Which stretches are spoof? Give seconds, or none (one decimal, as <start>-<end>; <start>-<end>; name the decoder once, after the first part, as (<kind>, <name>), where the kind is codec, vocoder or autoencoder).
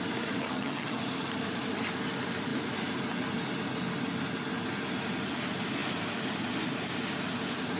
0.5-1.0 (vocoder, HiFi-GAN)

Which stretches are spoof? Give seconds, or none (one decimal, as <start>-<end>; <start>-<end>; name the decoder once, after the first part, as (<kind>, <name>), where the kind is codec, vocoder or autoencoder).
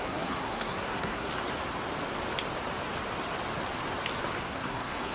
0.0-1.3 (codec, SNAC); 4.4-5.1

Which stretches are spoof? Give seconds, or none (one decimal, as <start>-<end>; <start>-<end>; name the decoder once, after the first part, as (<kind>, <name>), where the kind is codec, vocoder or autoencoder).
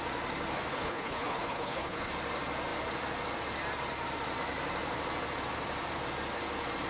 0.7-2.1 (codec, HILCodec)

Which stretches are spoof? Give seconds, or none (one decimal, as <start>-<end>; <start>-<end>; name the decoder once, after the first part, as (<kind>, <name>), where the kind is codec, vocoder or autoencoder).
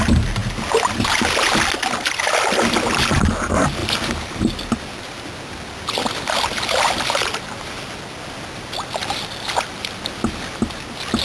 none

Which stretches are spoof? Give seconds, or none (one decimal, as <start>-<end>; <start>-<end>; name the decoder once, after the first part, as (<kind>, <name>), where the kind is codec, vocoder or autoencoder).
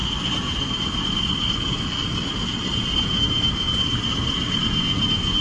none